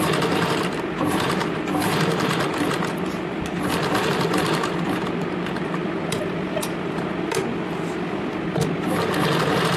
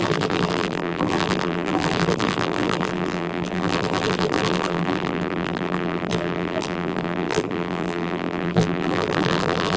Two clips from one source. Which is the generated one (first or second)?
second